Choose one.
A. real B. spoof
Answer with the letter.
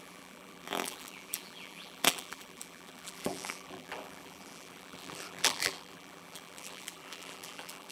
B